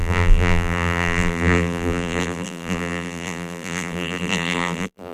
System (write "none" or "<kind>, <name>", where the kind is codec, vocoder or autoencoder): vocoder, BigVGAN v2